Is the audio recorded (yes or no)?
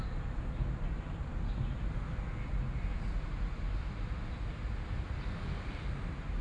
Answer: yes